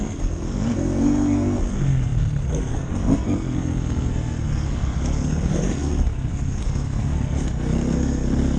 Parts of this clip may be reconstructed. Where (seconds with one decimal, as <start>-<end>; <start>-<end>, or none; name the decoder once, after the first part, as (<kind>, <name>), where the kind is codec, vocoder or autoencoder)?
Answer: 0.0-8.6 (codec, SNAC)